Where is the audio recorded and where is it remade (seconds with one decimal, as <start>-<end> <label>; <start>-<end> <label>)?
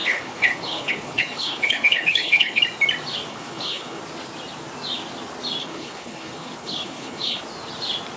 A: 0.0-2.6 remade; 2.6-3.3 recorded; 3.3-4.0 remade; 4.0-5.6 recorded; 5.6-7.4 remade; 7.4-8.2 recorded